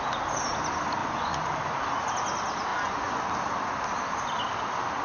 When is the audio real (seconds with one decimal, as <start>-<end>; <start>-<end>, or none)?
0.0-1.0; 1.5-2.7; 3.2-5.0